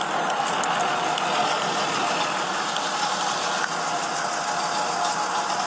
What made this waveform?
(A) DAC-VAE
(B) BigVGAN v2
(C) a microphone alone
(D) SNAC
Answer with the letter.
C